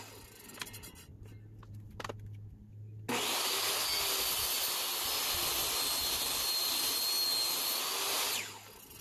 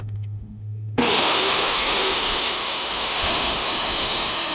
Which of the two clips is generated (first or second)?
second